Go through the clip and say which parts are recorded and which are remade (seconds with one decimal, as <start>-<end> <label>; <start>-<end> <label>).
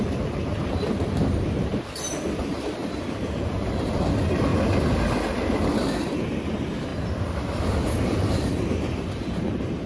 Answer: 0.0-1.7 remade; 1.7-2.4 recorded; 2.4-4.5 remade; 4.5-6.2 recorded; 6.2-6.9 remade; 6.9-8.0 recorded; 8.0-9.9 remade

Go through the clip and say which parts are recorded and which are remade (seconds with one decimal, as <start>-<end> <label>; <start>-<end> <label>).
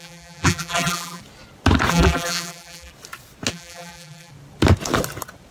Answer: 0.0-1.2 remade; 1.2-1.9 recorded; 1.9-2.9 remade; 2.9-3.5 recorded; 3.5-4.3 remade; 4.3-5.5 recorded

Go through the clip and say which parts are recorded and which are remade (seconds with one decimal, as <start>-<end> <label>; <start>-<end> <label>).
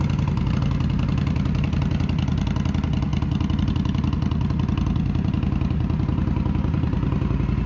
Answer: 0.0-7.7 recorded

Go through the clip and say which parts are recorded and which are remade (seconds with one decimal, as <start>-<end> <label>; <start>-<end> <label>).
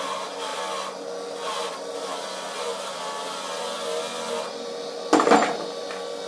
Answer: 0.0-0.5 recorded; 0.5-4.3 remade; 4.3-6.3 recorded